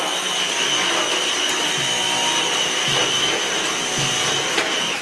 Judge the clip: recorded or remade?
recorded